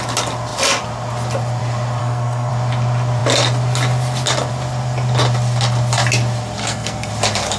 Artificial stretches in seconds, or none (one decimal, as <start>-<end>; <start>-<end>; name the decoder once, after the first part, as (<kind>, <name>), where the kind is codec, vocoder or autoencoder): 2.0-2.5 (codec, SNAC); 6.6-7.1